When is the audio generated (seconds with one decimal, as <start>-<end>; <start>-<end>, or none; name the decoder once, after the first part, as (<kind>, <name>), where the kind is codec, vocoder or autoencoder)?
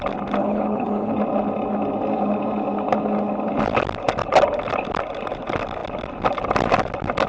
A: 0.4-1.1 (codec, HILCodec)